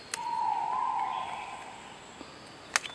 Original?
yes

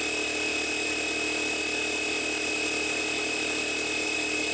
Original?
yes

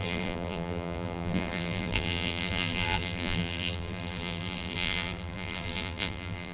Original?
no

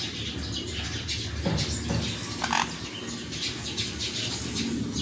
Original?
yes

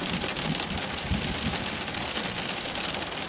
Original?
yes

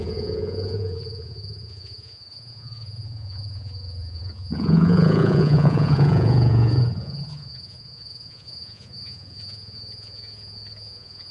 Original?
no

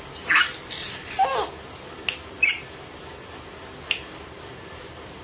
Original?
yes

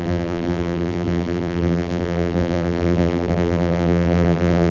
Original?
no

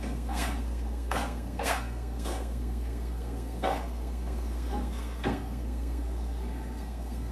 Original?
no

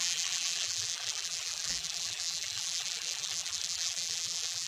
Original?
no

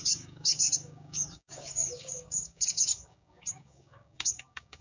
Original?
no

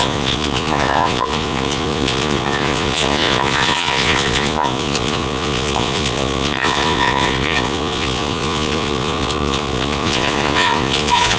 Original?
no